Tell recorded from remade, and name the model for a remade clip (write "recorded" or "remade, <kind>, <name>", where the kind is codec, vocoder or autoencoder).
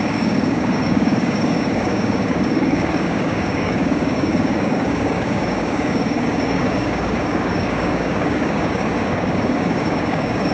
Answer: remade, codec, DAC